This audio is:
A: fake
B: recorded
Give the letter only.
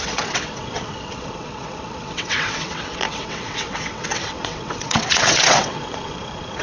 A